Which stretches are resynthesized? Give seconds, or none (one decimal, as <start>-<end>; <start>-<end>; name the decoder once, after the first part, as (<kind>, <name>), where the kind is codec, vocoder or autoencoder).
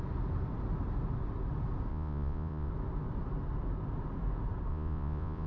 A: 1.9-2.7 (vocoder, Vocos); 4.7-5.5